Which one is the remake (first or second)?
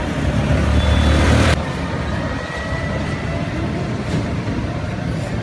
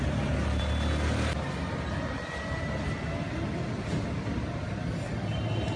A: first